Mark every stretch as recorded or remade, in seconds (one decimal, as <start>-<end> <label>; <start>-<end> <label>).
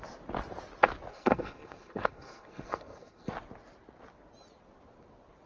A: 0.0-1.1 recorded; 1.1-3.3 remade; 3.3-5.5 recorded